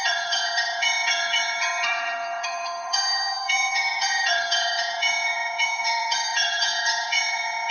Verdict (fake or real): fake